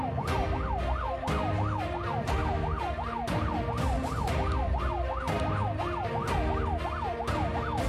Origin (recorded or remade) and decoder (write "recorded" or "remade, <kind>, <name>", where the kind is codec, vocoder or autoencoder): recorded